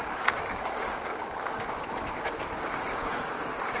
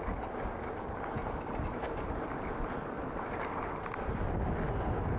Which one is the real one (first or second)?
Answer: second